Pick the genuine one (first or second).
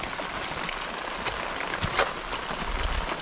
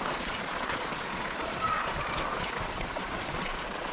first